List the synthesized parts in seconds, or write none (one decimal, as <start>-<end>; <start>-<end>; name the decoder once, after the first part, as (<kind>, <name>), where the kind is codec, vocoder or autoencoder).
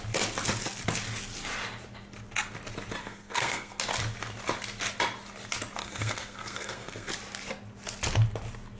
3.0-3.8 (codec, SNAC); 5.8-7.1